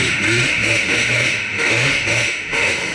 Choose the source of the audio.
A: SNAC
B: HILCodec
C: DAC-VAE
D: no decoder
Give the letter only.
C